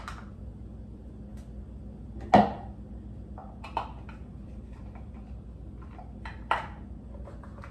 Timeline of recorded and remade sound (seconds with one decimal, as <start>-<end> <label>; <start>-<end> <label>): 0.0-7.7 recorded